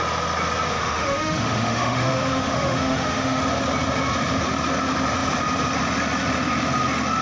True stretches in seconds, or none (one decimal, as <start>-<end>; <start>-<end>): 0.0-0.7; 3.4-7.2